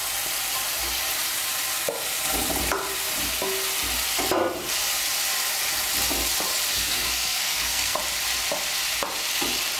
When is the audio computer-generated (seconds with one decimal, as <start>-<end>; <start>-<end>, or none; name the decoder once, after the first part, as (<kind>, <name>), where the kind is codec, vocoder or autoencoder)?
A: 6.7-8.0 (codec, SNAC)